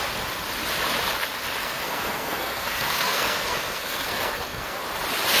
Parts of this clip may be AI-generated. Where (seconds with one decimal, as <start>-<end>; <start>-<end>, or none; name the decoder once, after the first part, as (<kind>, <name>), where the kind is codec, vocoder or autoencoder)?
1.6-4.8 (codec, SNAC)